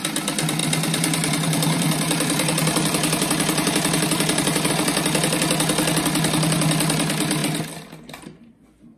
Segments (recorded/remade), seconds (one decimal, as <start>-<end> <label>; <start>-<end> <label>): 0.0-0.6 recorded; 0.6-4.7 remade; 4.7-9.0 recorded